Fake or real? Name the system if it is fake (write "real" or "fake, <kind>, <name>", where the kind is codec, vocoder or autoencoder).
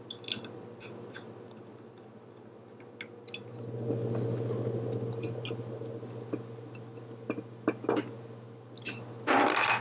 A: real